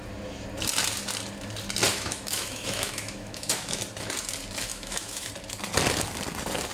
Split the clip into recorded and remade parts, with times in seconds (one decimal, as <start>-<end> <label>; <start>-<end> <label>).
0.0-1.9 recorded; 1.9-3.8 remade; 3.8-4.7 recorded; 4.7-5.3 remade; 5.3-6.7 recorded